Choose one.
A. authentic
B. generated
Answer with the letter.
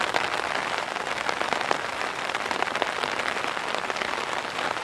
B